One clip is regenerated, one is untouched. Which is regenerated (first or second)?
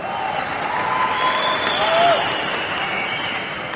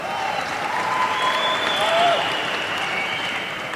second